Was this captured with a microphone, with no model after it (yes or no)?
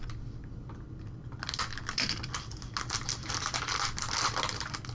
yes